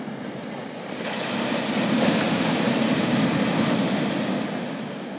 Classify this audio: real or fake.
real